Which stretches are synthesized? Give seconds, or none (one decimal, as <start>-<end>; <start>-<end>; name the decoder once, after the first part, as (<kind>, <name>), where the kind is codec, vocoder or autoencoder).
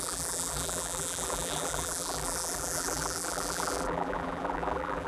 0.0-5.1 (vocoder, BigVGAN v2)